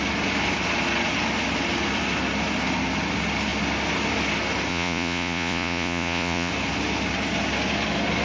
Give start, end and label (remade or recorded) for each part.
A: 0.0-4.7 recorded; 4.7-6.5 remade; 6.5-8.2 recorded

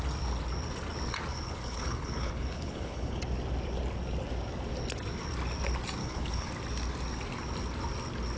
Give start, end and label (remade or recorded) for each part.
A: 0.0-1.3 recorded; 1.3-3.2 remade; 3.2-6.0 recorded; 6.0-6.5 remade; 6.5-8.4 recorded